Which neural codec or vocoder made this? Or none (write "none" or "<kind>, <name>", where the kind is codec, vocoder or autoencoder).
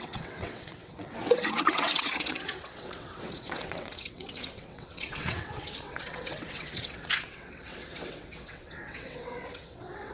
vocoder, WaveNeXt